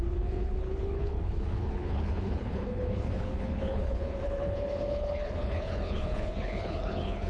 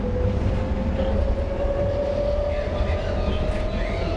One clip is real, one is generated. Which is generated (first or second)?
first